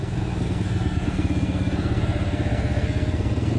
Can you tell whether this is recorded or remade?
remade